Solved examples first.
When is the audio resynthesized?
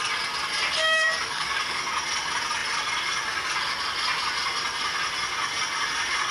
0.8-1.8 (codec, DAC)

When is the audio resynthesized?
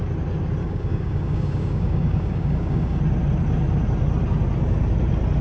0.6-3.0 (codec, DAC)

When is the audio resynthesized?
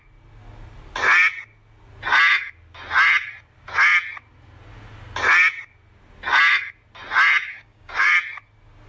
7.4-8.1 (codec, DAC)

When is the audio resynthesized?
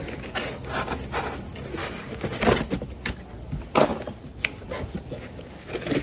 1.8-2.4 (codec, DAC)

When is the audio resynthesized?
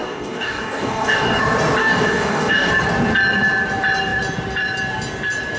0.0-1.4 (codec, DAC); 1.8-2.7